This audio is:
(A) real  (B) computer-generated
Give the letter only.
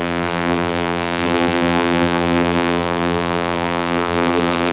B